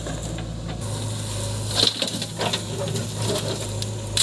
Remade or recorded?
recorded